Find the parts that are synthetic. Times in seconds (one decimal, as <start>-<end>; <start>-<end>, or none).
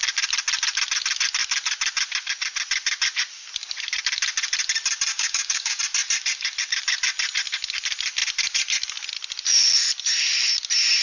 5.1-5.8